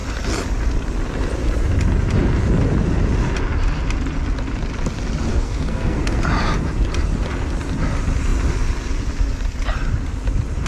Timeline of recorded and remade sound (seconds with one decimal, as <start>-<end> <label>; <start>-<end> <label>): 0.0-5.3 recorded; 5.3-6.2 remade; 6.2-10.7 recorded